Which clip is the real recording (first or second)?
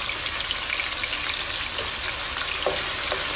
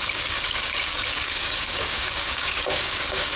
first